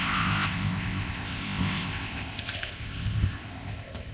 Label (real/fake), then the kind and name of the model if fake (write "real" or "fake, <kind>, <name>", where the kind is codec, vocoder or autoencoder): fake, codec, ZipCodec